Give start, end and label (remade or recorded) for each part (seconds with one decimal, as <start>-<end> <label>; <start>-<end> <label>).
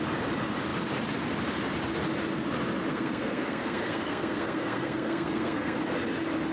0.0-2.9 recorded; 2.9-5.8 remade; 5.8-6.5 recorded